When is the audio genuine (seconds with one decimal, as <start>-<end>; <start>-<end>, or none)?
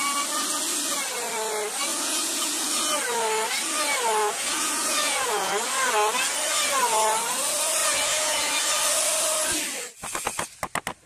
0.0-1.9; 2.7-4.2; 5.5-7.8; 8.6-11.1